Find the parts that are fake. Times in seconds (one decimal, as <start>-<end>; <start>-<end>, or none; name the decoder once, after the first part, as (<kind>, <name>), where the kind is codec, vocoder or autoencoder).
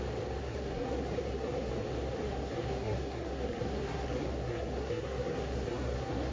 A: 0.4-1.7 (codec, SNAC); 2.2-6.3